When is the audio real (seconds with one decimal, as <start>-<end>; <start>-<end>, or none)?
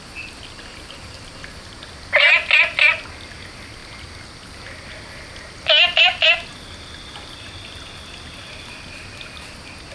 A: 0.0-9.9